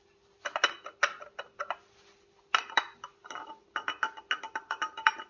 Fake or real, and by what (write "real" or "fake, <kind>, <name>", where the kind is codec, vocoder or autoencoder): real